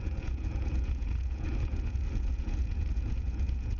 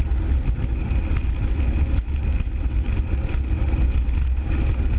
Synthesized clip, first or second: first